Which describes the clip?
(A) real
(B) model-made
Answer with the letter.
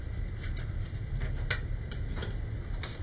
A